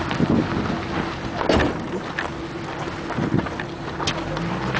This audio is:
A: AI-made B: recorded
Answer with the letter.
B